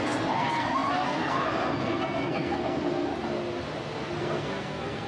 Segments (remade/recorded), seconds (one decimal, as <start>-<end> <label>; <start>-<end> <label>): 0.0-3.1 remade; 3.1-4.2 recorded; 4.2-5.1 remade

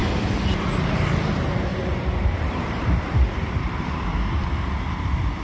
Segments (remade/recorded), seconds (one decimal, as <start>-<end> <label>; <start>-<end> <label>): 0.0-1.7 recorded; 1.7-4.9 remade; 4.9-5.4 recorded

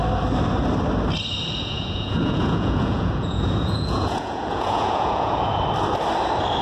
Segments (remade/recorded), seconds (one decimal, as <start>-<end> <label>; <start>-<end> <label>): 0.0-1.6 recorded; 1.6-5.6 remade; 5.6-6.6 recorded

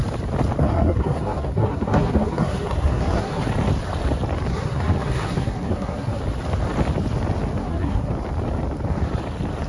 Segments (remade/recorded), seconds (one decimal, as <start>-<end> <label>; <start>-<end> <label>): 0.0-0.6 recorded; 0.6-3.4 remade; 3.4-4.5 recorded; 4.5-6.2 remade; 6.2-7.6 recorded; 7.6-8.1 remade; 8.1-9.7 recorded

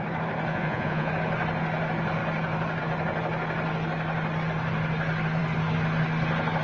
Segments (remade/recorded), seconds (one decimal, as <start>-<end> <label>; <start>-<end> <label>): 0.0-0.5 recorded; 0.5-1.1 remade; 1.1-6.6 recorded

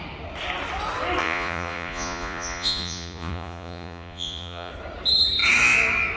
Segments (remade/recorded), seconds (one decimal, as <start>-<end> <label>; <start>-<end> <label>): 0.0-1.2 recorded; 1.2-4.7 remade; 4.7-6.2 recorded